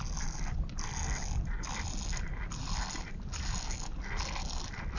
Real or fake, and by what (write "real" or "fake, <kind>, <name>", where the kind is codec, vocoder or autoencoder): real